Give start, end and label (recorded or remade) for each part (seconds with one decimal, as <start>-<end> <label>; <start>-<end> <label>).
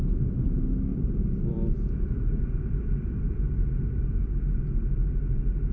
0.0-0.9 recorded; 0.9-4.3 remade; 4.3-5.7 recorded